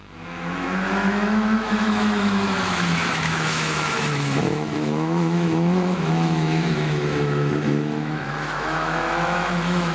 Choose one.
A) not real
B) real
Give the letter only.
A